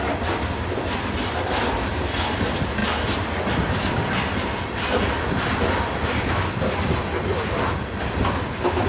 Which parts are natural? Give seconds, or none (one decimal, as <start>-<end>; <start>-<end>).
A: 0.0-8.9